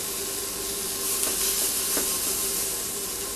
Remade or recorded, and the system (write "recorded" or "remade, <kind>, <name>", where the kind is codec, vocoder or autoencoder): recorded